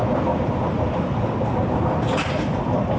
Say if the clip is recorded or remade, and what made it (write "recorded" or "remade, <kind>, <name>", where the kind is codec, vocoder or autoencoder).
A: recorded